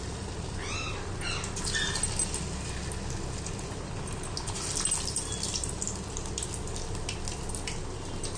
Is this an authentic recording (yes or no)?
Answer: yes